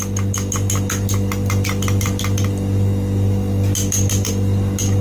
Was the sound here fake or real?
real